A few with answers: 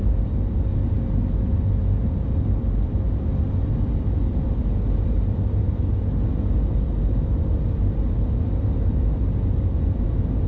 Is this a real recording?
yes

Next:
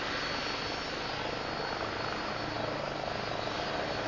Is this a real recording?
yes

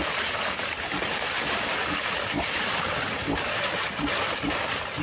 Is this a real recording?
yes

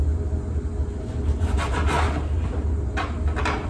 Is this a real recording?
yes